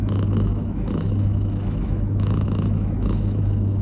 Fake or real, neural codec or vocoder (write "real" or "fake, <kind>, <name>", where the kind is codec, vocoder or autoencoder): fake, autoencoder, DAC-VAE